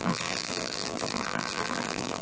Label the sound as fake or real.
fake